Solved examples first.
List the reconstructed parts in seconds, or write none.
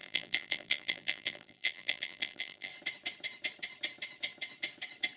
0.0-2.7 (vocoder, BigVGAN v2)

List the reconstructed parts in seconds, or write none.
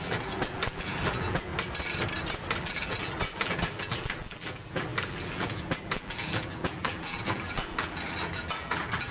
0.0-1.5 (vocoder, BigVGAN v2); 2.6-9.1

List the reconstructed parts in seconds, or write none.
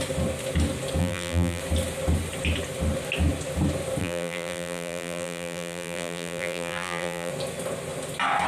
1.0-1.6 (vocoder, BigVGAN v2); 4.0-7.3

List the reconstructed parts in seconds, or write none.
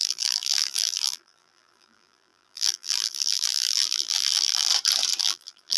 0.0-4.7 (vocoder, BigVGAN v2); 5.2-5.8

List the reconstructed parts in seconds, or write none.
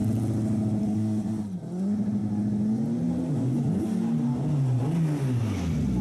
none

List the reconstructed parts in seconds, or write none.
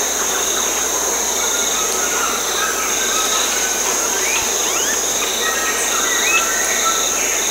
1.6-5.3 (vocoder, BigVGAN v2)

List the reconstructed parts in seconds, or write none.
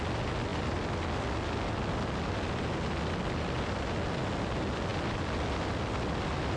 none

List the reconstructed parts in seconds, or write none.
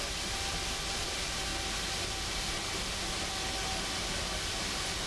0.0-1.5 (vocoder, BigVGAN v2); 4.6-5.1